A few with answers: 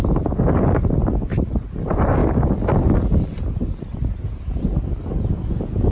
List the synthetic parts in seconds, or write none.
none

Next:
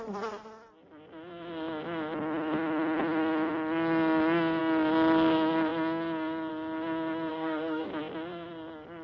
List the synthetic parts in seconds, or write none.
7.3-7.9 (codec, DAC)